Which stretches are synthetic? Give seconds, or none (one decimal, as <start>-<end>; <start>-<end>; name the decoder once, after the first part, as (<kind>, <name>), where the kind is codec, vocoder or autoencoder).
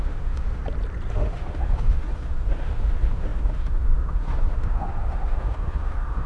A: 0.0-0.6 (autoencoder, DAC-VAE); 1.1-6.3